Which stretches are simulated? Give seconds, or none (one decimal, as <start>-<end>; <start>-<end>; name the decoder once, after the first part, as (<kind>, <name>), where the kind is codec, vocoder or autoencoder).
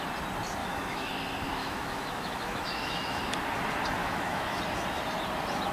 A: 0.6-1.1 (autoencoder, DAC-VAE); 1.6-3.2; 4.0-4.6